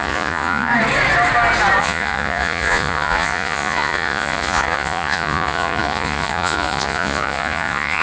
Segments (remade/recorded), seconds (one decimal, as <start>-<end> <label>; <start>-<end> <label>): 0.0-0.7 remade; 0.7-1.8 recorded; 1.8-8.0 remade